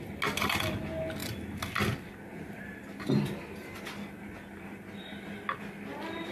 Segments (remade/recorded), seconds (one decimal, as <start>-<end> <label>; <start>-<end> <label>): 0.0-6.3 recorded